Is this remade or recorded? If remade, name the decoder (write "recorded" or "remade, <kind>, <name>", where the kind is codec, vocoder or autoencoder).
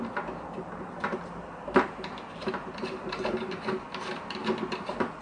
recorded